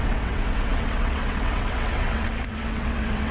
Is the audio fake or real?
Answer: fake